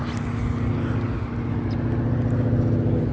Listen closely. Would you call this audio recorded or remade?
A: recorded